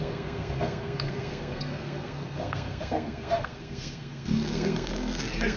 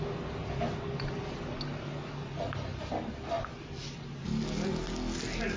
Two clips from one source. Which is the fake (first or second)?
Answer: first